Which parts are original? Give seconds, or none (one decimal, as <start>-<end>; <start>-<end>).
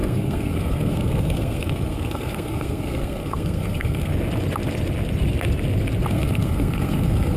4.1-6.1